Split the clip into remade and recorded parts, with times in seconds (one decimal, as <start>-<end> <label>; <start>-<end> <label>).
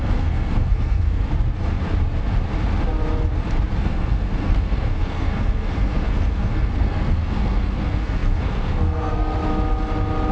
0.0-1.3 remade; 1.3-3.8 recorded; 3.8-9.5 remade; 9.5-10.3 recorded